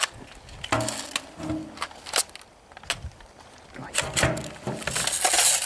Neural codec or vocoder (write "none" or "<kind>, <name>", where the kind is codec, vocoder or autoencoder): none